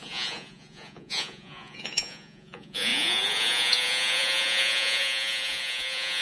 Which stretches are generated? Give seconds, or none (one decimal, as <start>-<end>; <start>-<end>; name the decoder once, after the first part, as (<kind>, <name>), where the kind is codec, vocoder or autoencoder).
0.0-6.2 (vocoder, Vocos)